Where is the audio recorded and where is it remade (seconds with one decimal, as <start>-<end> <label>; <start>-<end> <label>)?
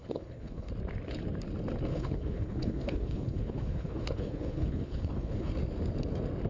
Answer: 0.0-0.7 remade; 0.7-1.9 recorded; 1.9-5.5 remade; 5.5-6.5 recorded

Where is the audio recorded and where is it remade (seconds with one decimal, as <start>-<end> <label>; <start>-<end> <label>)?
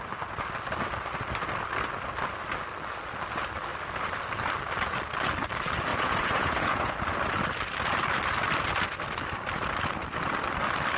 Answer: 0.0-5.9 recorded; 5.9-6.9 remade; 6.9-11.0 recorded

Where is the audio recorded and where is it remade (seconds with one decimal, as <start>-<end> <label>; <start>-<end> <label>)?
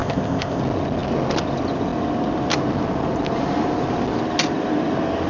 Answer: 0.0-0.6 remade; 0.6-5.3 recorded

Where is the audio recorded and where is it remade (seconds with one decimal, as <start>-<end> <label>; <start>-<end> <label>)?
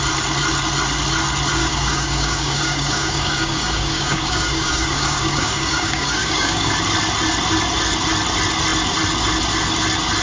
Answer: 0.0-1.6 recorded; 1.6-6.7 remade; 6.7-10.2 recorded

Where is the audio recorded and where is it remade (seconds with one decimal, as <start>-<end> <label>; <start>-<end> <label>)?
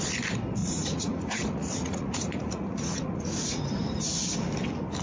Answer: 0.0-0.6 recorded; 0.6-3.6 remade; 3.6-5.0 recorded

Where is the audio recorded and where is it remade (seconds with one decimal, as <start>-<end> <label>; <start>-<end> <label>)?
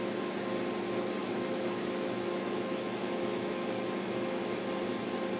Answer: 0.0-1.2 recorded; 1.2-4.4 remade; 4.4-5.4 recorded